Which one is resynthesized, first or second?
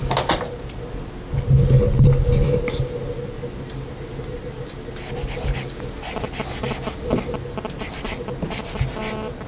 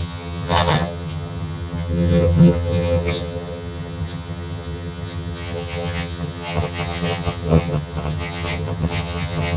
second